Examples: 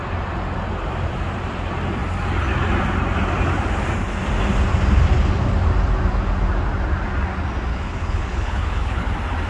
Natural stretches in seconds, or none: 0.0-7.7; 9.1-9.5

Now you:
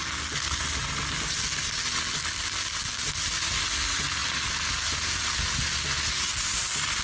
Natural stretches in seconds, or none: 0.0-7.0

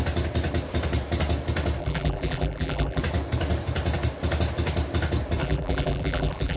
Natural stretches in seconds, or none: 0.0-1.8; 3.0-5.4

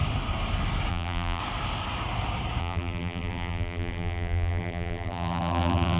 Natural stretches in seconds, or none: 0.0-0.9; 1.4-2.6

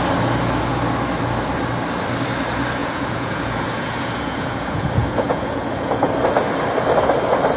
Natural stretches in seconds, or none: 0.0-2.8; 6.1-7.6